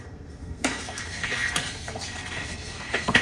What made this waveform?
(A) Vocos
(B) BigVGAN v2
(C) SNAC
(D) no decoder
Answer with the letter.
C